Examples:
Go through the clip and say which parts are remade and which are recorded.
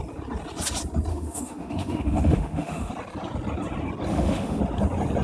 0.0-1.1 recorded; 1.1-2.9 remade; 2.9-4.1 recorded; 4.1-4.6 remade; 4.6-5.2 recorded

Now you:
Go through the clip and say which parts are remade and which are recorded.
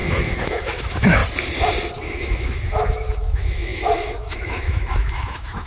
0.0-1.2 remade; 1.2-2.0 recorded; 2.0-5.7 remade